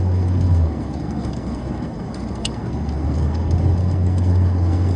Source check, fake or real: fake